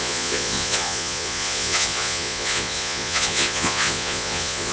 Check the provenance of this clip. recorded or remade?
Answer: remade